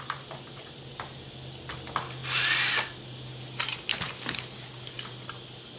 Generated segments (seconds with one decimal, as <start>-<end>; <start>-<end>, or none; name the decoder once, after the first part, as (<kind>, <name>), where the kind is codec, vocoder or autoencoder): none